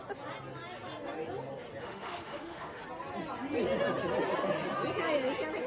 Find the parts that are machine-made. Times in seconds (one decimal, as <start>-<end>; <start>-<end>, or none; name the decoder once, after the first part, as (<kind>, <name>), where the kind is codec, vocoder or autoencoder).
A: 1.8-2.8 (autoencoder, DAC-VAE)